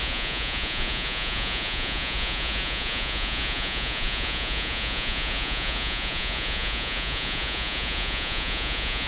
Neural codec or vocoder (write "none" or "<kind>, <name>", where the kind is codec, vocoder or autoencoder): vocoder, Vocos